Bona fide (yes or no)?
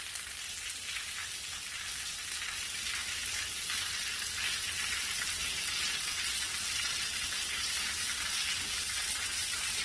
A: yes